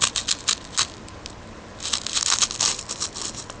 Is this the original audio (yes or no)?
yes